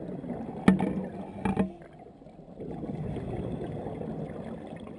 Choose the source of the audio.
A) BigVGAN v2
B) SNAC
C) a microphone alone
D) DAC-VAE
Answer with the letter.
C